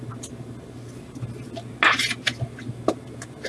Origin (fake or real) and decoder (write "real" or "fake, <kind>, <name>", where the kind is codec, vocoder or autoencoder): real